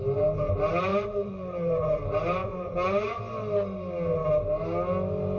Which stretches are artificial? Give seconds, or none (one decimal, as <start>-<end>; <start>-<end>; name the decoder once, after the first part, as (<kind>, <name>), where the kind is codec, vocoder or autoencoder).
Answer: 0.9-2.0 (vocoder, Vocos); 2.4-3.2